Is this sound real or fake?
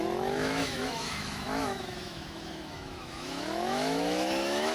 fake